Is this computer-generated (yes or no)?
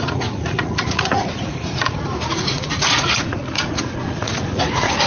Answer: yes